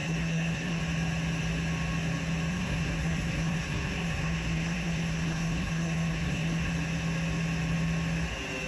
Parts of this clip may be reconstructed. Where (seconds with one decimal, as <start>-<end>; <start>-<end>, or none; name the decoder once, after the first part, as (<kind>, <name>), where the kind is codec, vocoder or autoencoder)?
0.0-0.8 (codec, SNAC); 2.5-6.7